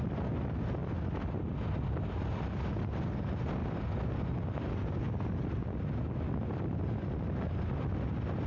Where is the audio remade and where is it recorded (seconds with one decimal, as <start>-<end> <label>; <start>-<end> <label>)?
0.0-8.5 recorded